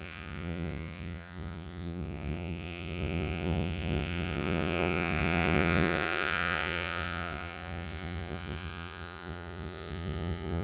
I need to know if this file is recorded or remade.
remade